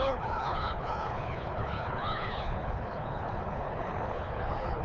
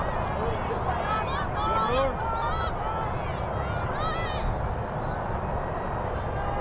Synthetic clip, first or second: first